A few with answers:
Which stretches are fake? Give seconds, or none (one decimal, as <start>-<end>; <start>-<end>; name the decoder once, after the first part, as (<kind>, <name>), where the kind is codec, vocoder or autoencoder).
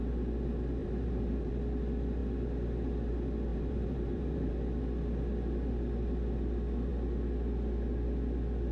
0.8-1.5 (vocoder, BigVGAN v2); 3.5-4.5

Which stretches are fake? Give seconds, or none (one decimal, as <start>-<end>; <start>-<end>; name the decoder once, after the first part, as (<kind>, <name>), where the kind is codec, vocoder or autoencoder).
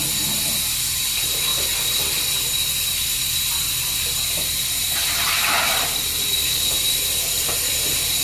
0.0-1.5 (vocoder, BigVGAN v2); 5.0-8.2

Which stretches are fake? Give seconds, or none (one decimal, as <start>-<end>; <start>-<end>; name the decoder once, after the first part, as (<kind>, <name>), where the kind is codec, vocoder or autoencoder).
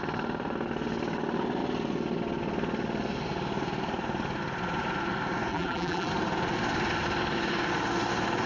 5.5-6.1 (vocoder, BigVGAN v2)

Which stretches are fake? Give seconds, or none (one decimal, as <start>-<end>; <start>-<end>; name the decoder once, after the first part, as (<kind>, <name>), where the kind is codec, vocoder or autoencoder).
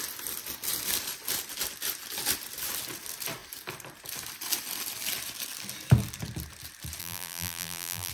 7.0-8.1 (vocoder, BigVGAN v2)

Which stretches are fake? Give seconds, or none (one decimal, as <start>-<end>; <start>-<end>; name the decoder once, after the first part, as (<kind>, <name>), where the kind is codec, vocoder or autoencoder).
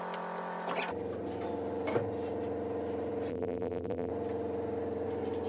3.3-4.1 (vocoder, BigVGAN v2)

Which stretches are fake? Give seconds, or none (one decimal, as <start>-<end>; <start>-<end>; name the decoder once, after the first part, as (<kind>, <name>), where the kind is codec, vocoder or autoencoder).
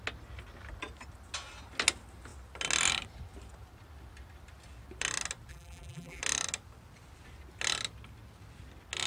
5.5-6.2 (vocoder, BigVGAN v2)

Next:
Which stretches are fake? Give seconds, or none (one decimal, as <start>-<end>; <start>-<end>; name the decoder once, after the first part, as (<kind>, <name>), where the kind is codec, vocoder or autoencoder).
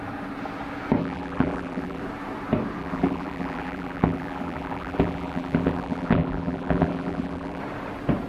1.0-2.0 (vocoder, BigVGAN v2); 2.8-7.6